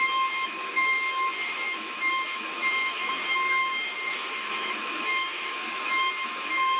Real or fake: fake